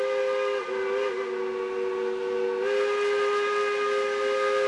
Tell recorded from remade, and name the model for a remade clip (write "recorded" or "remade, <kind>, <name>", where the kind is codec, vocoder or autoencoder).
recorded